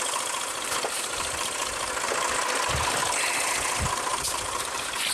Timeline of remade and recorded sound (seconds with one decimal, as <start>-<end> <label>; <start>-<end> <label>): 0.0-5.1 recorded